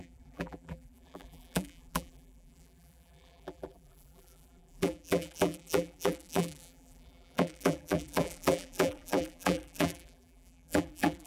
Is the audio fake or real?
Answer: fake